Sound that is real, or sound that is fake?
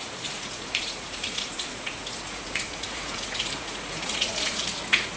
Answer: fake